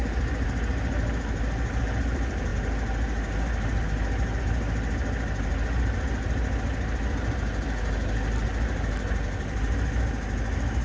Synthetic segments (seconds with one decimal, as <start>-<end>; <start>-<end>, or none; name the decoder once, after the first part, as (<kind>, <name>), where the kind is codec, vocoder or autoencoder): none